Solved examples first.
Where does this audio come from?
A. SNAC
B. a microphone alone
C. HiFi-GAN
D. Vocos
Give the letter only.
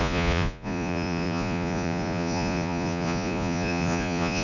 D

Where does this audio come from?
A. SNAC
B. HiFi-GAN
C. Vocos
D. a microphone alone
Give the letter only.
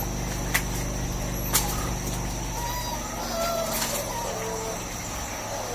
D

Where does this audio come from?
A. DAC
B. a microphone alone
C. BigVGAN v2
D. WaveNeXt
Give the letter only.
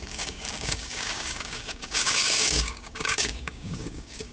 A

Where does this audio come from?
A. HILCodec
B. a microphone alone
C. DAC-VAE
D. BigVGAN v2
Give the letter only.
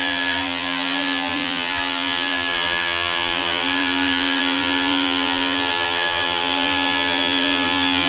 D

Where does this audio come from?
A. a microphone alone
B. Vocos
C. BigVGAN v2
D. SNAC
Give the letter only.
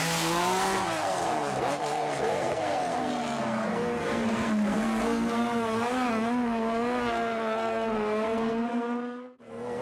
D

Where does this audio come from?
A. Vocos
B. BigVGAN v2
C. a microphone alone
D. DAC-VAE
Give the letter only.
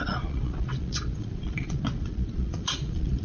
A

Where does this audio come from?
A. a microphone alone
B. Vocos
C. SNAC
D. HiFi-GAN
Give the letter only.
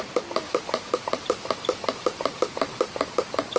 A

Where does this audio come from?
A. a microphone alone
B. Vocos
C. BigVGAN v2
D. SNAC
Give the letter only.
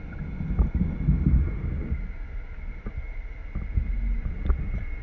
A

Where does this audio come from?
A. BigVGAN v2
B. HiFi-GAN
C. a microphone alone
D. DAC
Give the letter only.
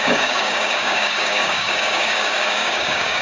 D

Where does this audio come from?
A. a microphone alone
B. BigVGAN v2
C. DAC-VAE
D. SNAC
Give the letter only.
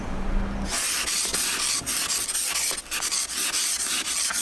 A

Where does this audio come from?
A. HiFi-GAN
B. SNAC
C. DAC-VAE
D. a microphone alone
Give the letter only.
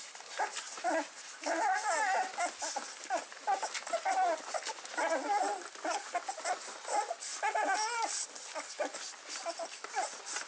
D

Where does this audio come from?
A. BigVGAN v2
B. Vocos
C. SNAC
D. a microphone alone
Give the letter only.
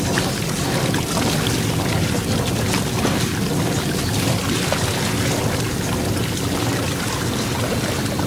D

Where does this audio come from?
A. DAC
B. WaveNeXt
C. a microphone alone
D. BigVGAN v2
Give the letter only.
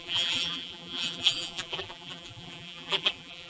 D